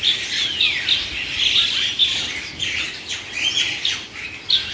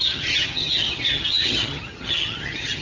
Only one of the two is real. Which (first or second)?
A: first